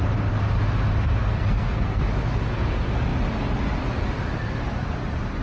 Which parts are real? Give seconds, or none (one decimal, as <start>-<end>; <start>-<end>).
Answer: 0.0-1.3; 2.0-5.4